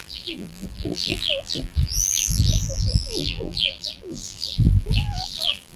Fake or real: fake